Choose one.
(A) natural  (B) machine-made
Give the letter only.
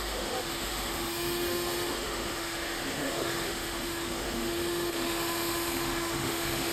B